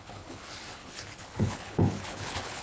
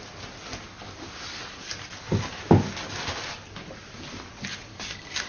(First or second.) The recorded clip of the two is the second